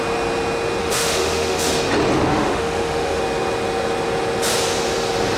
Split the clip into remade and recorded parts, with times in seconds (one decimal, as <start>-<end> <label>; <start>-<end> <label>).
0.0-0.8 recorded; 0.8-1.7 remade; 1.7-2.3 recorded; 2.3-3.2 remade; 3.2-5.4 recorded